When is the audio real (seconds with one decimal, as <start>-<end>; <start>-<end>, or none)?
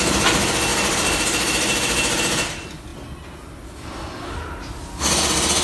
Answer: 0.0-0.7; 2.2-5.6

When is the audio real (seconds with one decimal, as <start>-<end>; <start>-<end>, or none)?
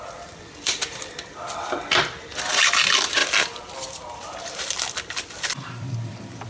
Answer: none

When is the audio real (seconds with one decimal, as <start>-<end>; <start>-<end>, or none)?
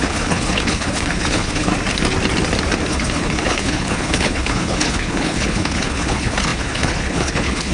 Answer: 1.7-2.9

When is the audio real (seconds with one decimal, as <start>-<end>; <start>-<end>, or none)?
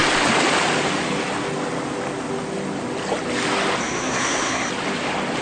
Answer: 0.0-3.8; 4.7-5.4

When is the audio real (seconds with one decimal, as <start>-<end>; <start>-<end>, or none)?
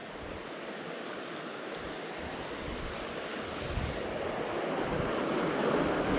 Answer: 0.0-6.2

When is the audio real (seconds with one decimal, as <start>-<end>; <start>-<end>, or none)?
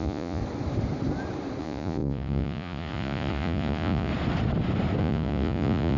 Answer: 0.4-1.6; 4.1-5.0